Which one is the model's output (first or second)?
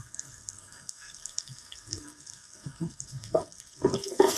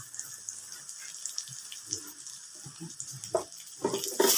first